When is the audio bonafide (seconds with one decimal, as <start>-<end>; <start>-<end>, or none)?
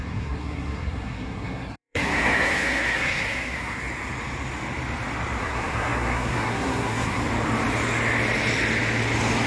3.8-5.4; 7.2-9.5